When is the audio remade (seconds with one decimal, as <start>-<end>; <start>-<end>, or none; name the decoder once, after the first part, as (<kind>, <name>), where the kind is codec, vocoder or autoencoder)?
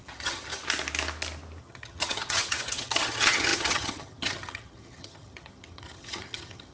0.0-0.6 (vocoder, HiFi-GAN); 1.6-6.7